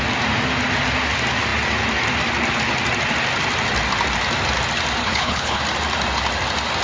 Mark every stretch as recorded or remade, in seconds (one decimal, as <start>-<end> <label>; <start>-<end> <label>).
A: 0.0-5.0 recorded; 5.0-5.6 remade; 5.6-6.8 recorded

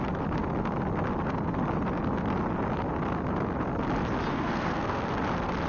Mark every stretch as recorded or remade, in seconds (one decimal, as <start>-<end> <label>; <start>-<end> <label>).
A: 0.0-4.3 recorded; 4.3-5.0 remade; 5.0-5.7 recorded

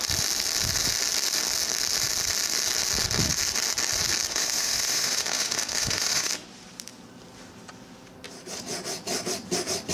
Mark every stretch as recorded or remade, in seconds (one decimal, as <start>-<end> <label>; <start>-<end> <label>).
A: 0.0-4.3 recorded; 4.3-6.3 remade; 6.3-9.9 recorded

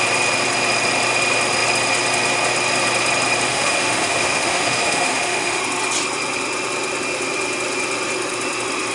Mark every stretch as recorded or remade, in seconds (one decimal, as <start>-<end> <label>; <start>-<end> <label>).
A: 0.0-3.5 recorded; 3.5-5.6 remade; 5.6-8.9 recorded